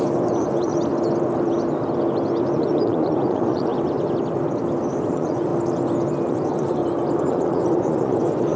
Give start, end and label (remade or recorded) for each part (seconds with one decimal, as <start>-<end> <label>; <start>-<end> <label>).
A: 0.0-0.7 remade; 0.7-2.4 recorded; 2.4-3.7 remade; 3.7-5.0 recorded; 5.0-5.5 remade; 5.5-6.3 recorded; 6.3-6.8 remade; 6.8-7.3 recorded; 7.3-8.6 remade